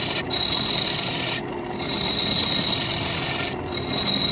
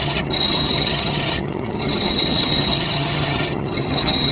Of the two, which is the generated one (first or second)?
second